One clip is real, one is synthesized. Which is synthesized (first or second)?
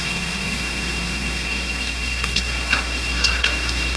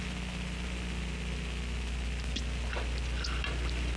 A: first